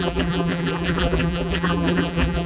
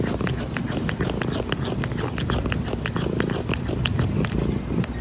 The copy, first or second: first